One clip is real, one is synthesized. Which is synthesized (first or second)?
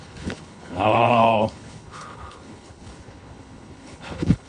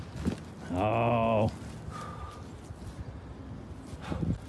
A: first